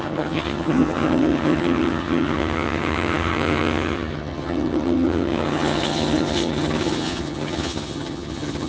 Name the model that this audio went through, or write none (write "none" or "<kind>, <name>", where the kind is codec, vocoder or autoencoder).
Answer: vocoder, HiFi-GAN